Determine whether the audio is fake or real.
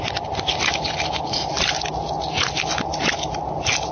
real